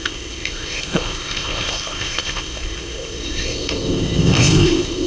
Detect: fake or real fake